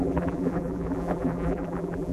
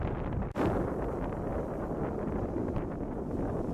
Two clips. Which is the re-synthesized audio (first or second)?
first